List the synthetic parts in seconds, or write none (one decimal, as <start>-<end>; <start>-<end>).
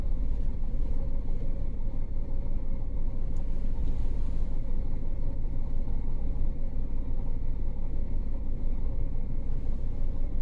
none